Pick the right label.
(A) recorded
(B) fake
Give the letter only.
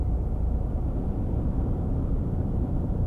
B